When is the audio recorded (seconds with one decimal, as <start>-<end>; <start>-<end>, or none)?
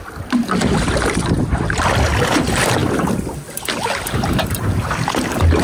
0.0-5.6